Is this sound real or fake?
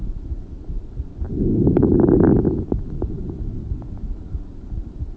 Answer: real